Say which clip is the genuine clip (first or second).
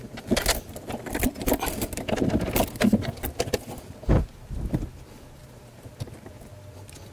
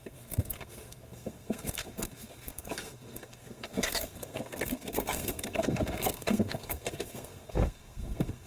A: first